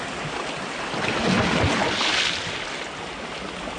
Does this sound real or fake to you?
real